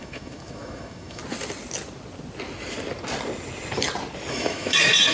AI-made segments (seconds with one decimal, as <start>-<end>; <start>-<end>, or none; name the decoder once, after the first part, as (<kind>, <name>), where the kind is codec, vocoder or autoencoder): 0.0-1.2 (autoencoder, DAC-VAE); 4.3-5.1